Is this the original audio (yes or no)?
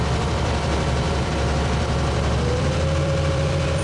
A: no